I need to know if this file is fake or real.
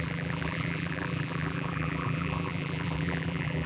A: fake